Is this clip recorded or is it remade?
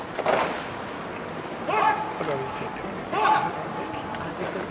recorded